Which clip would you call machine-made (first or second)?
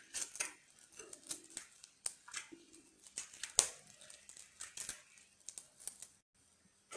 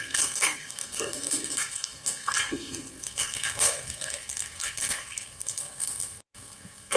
second